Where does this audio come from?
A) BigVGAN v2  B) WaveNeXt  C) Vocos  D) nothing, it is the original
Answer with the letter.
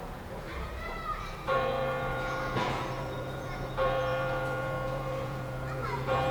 C